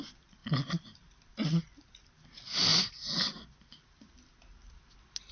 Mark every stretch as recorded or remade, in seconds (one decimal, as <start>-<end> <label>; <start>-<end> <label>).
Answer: 0.0-5.3 recorded